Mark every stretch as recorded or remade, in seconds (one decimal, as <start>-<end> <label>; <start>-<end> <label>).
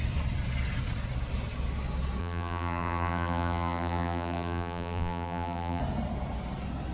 0.0-2.2 recorded; 2.2-5.8 remade; 5.8-6.9 recorded